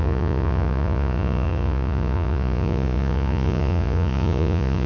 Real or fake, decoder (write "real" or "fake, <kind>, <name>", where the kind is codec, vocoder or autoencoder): fake, vocoder, Vocos